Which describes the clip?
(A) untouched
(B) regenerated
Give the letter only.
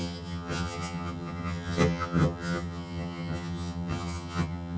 B